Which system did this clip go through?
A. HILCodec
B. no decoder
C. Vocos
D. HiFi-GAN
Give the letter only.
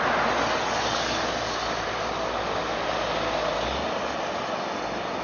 B